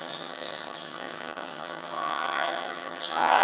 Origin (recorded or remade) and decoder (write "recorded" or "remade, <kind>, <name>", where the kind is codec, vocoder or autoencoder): remade, vocoder, HiFi-GAN